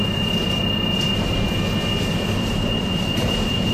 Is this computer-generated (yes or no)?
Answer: no